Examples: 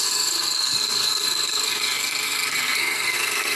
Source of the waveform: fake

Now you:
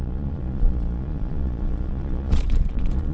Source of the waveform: fake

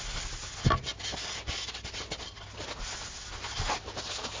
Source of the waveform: real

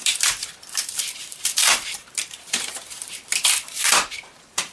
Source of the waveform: fake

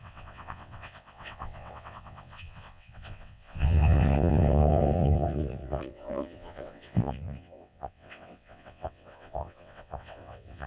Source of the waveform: fake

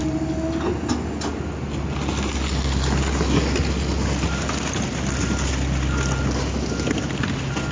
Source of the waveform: real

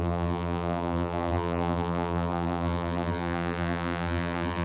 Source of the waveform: fake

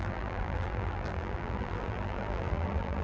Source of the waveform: fake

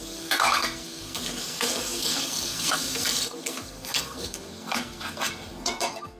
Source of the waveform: fake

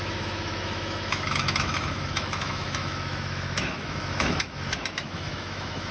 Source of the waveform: fake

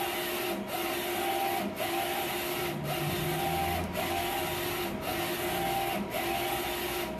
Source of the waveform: real